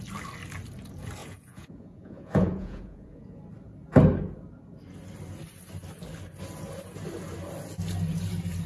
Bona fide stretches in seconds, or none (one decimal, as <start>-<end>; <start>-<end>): 0.0-1.2; 3.4-8.7